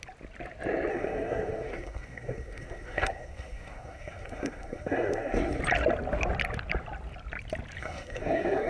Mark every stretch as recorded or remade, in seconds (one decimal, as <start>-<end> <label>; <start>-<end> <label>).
0.0-0.9 recorded; 0.9-5.6 remade; 5.6-7.8 recorded; 7.8-8.7 remade